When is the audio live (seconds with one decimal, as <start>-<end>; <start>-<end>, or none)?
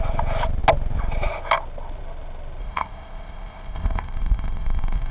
0.0-2.6